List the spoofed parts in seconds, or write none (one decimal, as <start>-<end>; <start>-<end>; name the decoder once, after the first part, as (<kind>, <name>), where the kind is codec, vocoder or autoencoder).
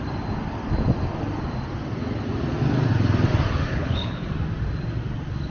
3.7-4.3 (codec, HILCodec)